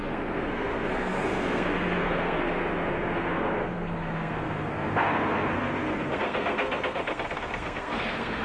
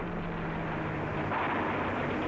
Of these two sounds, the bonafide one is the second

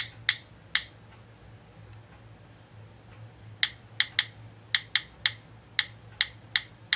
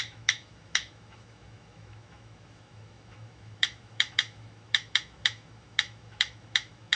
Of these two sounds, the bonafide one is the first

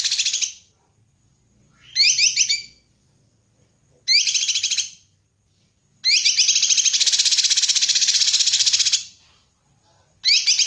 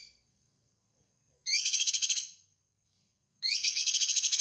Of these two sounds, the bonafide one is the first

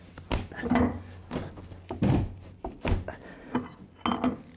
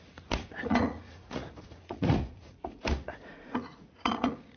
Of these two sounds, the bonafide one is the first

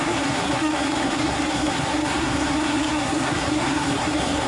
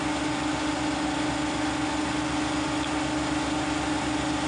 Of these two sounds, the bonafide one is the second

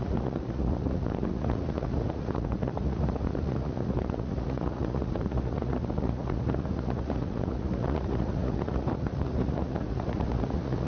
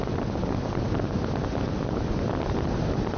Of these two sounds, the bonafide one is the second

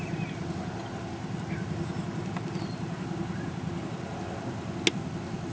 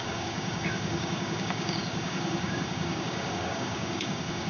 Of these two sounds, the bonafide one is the first